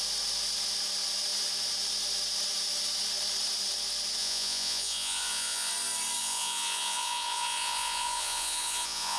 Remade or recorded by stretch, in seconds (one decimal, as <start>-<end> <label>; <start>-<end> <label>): 0.0-4.2 recorded; 4.2-5.7 remade; 5.7-6.2 recorded; 6.2-9.2 remade